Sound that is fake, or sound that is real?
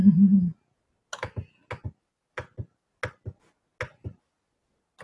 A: real